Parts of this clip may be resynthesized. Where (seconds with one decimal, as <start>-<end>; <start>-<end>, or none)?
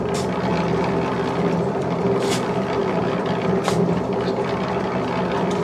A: 0.0-0.5; 1.1-5.6